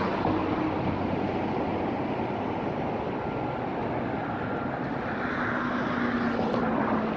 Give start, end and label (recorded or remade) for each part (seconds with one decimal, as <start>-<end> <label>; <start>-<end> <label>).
0.0-7.2 recorded